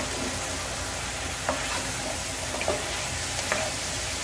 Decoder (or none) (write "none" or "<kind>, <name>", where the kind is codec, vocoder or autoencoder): none